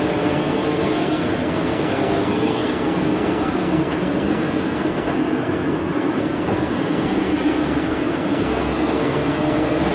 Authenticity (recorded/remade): remade